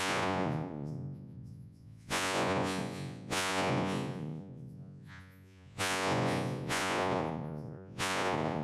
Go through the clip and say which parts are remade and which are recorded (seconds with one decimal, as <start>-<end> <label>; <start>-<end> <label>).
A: 0.0-8.6 remade